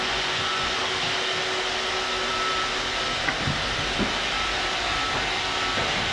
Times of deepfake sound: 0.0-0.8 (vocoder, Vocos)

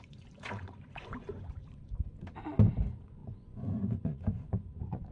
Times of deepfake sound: 0.0-1.8 (vocoder, Vocos); 2.8-5.1